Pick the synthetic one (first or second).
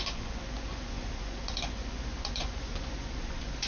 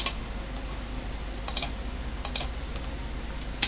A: first